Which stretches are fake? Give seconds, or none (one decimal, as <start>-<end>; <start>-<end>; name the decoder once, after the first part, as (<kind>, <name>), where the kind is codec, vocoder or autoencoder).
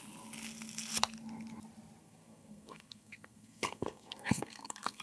2.0-5.0 (codec, SNAC)